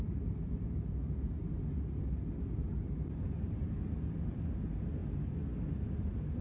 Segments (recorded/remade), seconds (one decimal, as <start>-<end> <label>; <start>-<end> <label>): 0.0-6.4 recorded